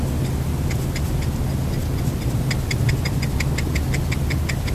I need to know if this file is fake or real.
real